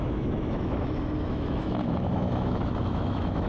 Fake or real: fake